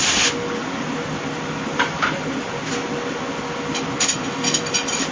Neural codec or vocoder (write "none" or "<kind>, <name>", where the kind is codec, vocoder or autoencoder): none